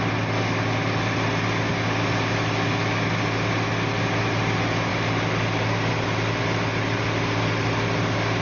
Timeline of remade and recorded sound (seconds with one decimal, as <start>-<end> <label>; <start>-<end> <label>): 0.0-8.4 recorded